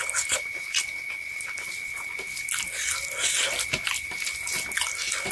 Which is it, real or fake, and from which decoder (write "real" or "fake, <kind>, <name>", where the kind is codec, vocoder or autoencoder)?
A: real